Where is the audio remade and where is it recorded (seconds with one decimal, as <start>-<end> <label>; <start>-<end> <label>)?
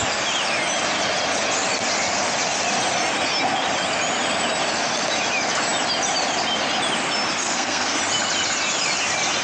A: 0.0-7.4 recorded; 7.4-8.0 remade; 8.0-9.4 recorded